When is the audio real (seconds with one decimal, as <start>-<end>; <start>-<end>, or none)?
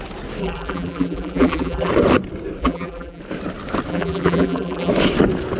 0.0-0.4; 1.9-2.6; 3.2-3.9; 4.9-5.6